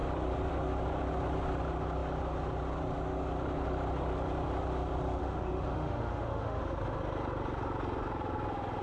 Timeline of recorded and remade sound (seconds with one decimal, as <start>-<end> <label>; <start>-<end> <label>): 0.0-5.2 recorded; 5.2-6.6 remade; 6.6-8.8 recorded